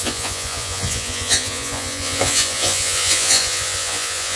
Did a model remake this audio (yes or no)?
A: yes